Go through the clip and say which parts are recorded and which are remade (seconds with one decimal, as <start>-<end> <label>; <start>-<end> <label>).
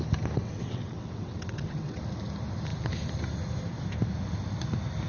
0.0-0.4 recorded; 0.4-2.0 remade; 2.0-5.1 recorded